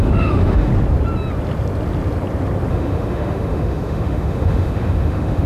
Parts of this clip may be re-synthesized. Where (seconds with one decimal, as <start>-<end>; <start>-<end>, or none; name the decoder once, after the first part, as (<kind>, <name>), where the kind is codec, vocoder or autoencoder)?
0.0-0.7 (autoencoder, DAC-VAE); 2.7-5.5